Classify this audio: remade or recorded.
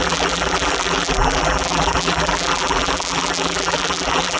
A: remade